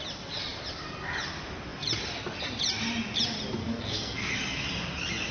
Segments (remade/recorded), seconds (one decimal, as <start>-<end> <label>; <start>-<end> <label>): 0.0-3.6 recorded; 3.6-4.3 remade; 4.3-5.3 recorded